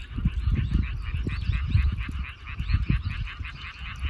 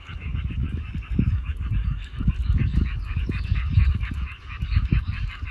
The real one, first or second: first